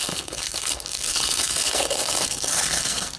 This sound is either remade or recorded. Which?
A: remade